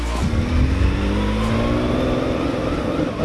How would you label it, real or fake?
real